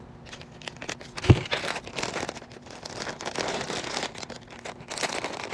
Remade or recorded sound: recorded